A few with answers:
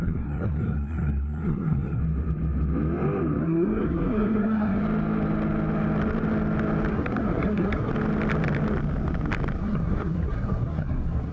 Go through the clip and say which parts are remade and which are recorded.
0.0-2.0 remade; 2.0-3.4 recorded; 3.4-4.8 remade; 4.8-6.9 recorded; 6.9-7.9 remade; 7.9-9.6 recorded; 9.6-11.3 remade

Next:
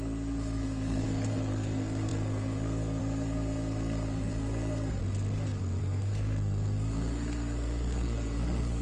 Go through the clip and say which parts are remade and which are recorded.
0.0-5.0 remade; 5.0-5.8 recorded; 5.8-8.8 remade

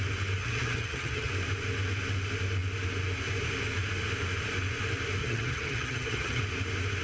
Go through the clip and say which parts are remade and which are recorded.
0.0-0.4 recorded; 0.4-1.3 remade; 1.3-5.2 recorded; 5.2-6.4 remade; 6.4-7.0 recorded

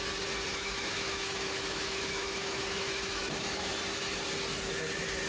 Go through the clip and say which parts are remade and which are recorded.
0.0-0.5 recorded; 0.5-3.7 remade; 3.7-5.3 recorded

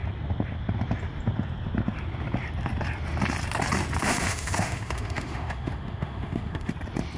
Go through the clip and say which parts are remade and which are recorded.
0.0-4.0 recorded; 4.0-6.7 remade; 6.7-7.2 recorded

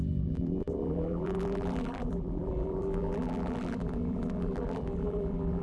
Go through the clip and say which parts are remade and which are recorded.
0.0-5.6 remade